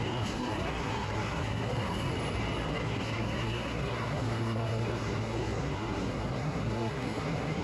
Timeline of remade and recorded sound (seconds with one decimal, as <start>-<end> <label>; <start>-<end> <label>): 0.0-2.1 remade; 2.1-2.7 recorded; 2.7-7.6 remade